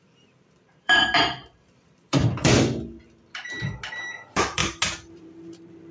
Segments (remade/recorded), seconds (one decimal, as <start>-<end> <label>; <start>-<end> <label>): 0.0-2.2 remade; 2.2-3.9 recorded; 3.9-4.6 remade; 4.6-5.1 recorded; 5.1-5.9 remade